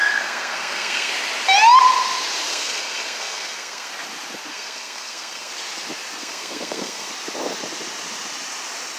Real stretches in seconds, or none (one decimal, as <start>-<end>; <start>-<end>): 1.1-2.5; 3.9-4.5; 5.5-6.2; 7.1-9.0